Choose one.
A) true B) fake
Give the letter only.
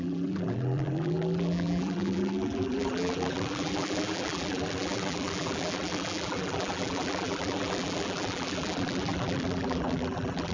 B